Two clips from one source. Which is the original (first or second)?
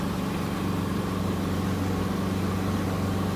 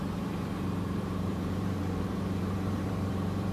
first